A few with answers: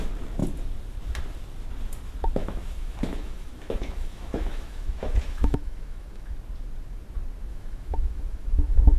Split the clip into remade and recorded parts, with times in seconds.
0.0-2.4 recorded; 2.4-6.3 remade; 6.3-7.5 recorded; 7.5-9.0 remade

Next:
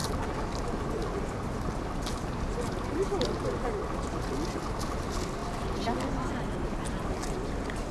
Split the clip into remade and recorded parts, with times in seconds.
0.0-7.9 recorded

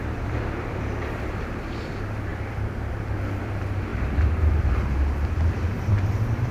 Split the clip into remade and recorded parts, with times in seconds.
0.0-6.5 remade

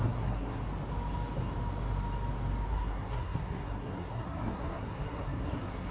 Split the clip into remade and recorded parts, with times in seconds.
0.0-0.6 remade; 0.6-2.7 recorded; 2.7-5.9 remade

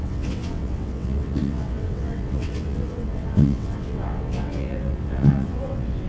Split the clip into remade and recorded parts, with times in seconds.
0.0-6.1 remade

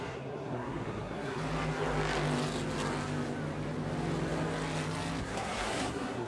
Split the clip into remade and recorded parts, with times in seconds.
0.0-1.4 remade; 1.4-5.2 recorded; 5.2-6.3 remade

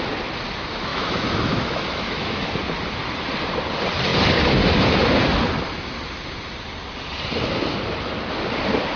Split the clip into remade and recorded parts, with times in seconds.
0.0-0.9 recorded; 0.9-2.5 remade; 2.5-9.0 recorded

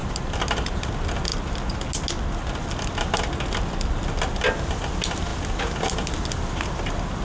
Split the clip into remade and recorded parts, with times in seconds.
0.0-0.8 remade; 0.8-7.2 recorded